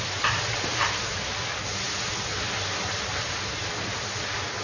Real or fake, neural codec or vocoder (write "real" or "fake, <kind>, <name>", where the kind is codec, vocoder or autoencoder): real